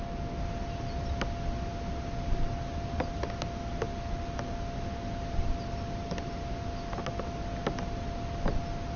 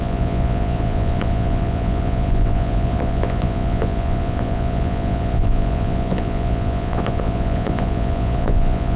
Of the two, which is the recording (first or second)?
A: first